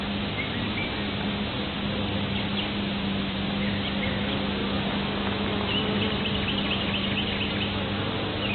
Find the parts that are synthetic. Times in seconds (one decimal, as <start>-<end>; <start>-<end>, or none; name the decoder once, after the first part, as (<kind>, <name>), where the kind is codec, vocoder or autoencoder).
none